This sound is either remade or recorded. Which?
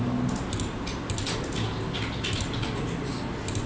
recorded